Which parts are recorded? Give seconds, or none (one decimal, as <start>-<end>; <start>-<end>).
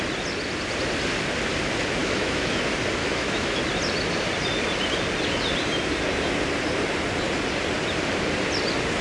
0.0-2.0; 2.6-3.0; 3.6-9.0